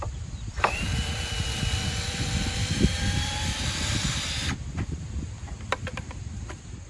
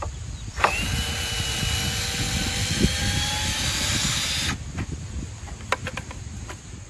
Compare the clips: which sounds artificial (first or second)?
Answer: first